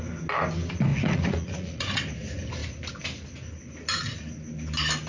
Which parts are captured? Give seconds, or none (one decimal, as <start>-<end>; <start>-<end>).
0.0-0.9; 2.0-5.1